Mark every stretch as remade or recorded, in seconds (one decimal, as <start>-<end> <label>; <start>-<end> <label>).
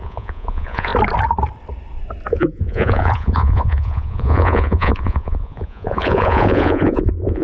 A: 0.0-0.9 remade; 0.9-2.3 recorded; 2.3-7.4 remade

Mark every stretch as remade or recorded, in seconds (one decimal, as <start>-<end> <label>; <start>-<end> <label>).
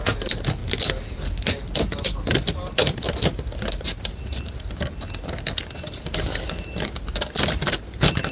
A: 0.0-8.3 recorded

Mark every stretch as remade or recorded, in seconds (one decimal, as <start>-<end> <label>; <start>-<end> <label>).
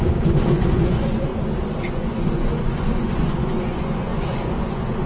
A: 0.0-1.3 remade; 1.3-1.9 recorded; 1.9-5.1 remade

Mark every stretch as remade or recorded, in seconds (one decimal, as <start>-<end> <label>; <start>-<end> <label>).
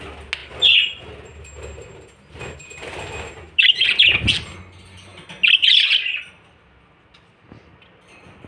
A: 0.0-8.5 recorded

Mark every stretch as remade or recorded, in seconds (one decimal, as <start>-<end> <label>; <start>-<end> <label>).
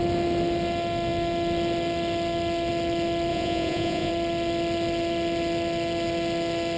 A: 0.0-3.3 recorded; 3.3-4.1 remade; 4.1-6.8 recorded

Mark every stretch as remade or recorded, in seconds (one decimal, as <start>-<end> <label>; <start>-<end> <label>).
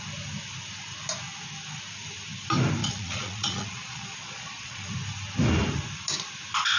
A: 0.0-2.8 recorded; 2.8-4.9 remade; 4.9-6.8 recorded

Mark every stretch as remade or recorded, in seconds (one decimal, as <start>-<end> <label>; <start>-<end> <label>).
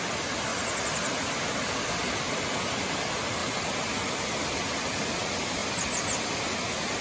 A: 0.0-7.0 recorded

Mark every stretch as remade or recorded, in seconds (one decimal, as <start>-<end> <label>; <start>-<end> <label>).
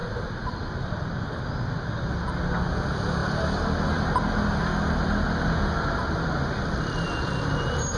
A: 0.0-8.0 recorded